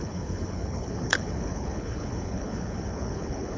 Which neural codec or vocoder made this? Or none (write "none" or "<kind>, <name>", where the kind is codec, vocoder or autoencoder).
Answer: codec, HILCodec